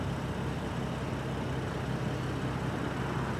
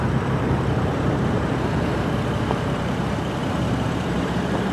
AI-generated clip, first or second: second